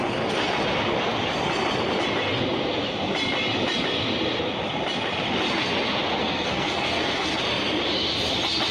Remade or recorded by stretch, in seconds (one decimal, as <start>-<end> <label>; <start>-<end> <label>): 0.0-6.2 recorded; 6.2-7.4 remade; 7.4-8.7 recorded